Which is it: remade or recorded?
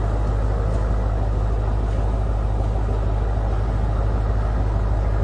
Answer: recorded